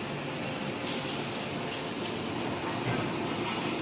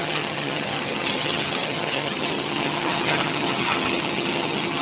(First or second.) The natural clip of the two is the first